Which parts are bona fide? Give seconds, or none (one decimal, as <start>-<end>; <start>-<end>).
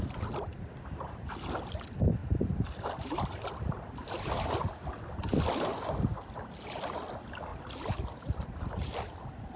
0.0-2.2; 4.5-7.5; 9.0-9.6